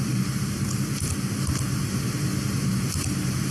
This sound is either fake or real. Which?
real